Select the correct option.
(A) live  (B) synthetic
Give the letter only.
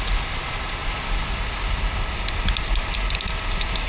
A